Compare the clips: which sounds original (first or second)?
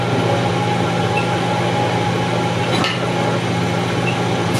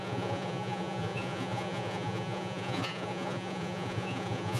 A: first